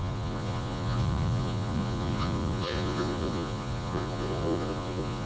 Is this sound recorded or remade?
remade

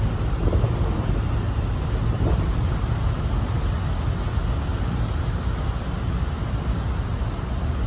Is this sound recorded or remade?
recorded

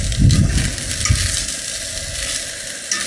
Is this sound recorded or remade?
recorded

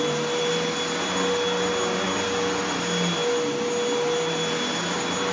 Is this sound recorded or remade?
recorded